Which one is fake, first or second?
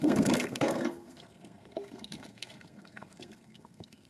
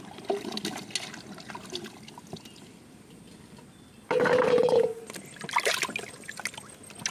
first